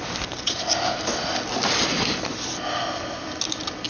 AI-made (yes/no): no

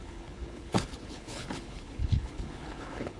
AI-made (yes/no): yes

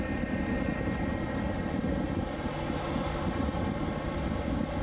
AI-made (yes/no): no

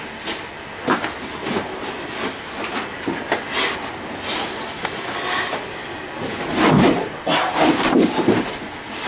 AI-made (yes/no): no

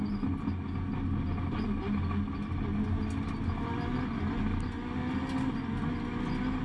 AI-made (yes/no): no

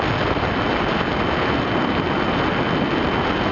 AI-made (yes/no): no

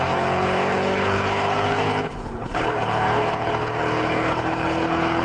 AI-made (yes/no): yes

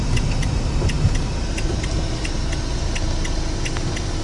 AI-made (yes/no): no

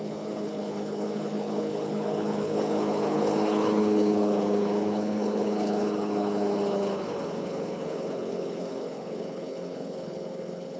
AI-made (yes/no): yes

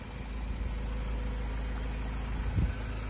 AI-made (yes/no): no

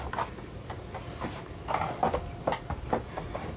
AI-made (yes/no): no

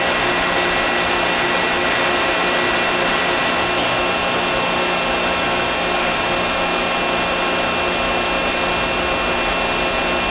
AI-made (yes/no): no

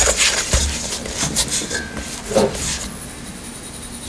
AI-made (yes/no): no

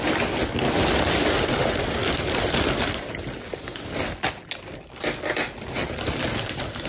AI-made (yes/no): no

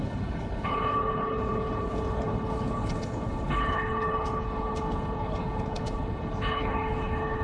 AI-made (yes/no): yes